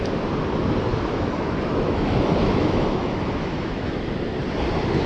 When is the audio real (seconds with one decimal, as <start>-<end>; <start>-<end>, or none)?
0.0-0.9; 4.0-5.1